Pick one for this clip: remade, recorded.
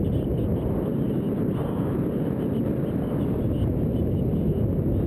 recorded